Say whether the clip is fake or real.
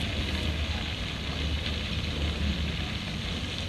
real